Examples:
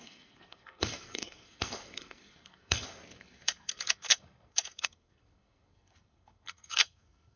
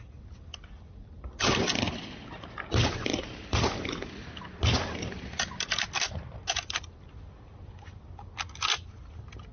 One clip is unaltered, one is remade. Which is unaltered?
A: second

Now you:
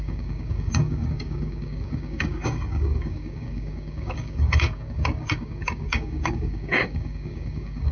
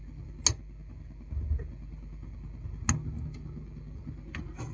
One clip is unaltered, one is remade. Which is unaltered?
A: second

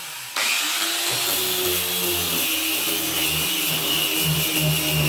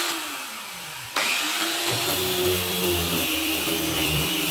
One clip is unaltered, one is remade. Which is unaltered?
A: first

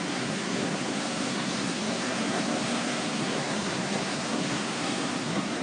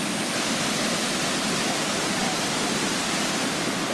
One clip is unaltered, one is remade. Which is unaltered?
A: second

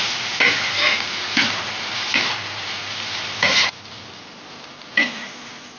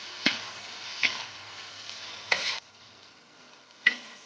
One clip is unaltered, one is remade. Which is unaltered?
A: first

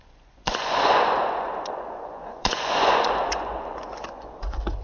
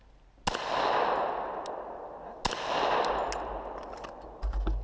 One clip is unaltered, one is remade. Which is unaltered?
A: second